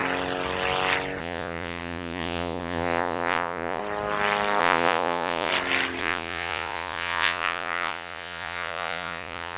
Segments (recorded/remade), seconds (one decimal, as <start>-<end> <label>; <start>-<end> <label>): 0.0-1.2 recorded; 1.2-3.8 remade; 3.8-4.6 recorded; 4.6-5.5 remade; 5.5-6.0 recorded; 6.0-9.6 remade